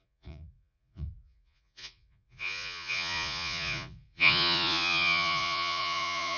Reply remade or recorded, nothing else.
remade